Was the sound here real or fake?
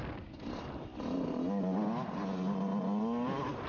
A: real